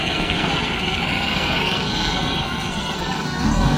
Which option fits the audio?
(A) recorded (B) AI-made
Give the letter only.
B